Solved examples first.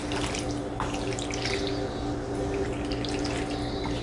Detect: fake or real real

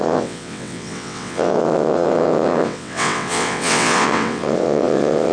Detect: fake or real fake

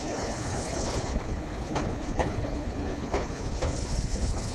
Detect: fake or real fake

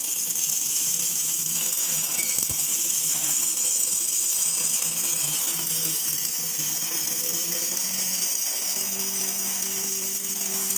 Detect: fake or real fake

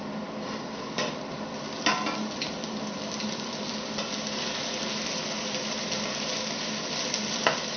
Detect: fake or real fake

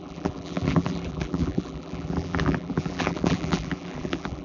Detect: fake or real fake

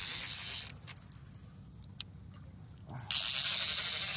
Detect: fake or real real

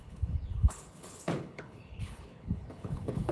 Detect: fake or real fake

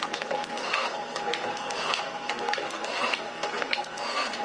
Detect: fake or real fake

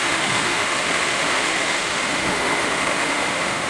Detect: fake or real fake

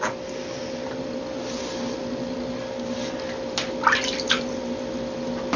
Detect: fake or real real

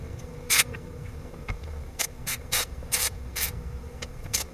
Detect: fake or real fake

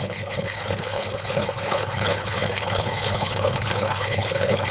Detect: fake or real fake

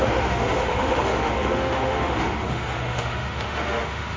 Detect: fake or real fake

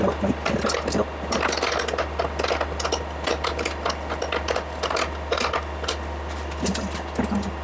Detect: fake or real real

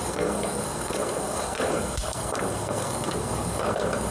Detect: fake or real fake